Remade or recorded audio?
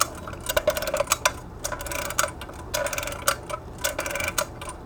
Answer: recorded